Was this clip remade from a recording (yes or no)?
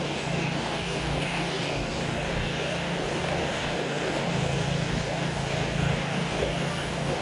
yes